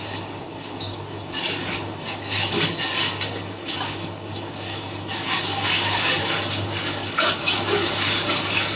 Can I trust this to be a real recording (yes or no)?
no